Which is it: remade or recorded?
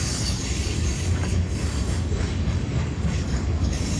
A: remade